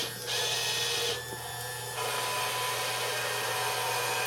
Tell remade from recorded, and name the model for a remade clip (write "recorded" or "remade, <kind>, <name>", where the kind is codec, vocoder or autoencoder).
recorded